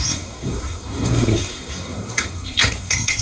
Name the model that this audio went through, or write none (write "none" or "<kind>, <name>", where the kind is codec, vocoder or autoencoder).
codec, SNAC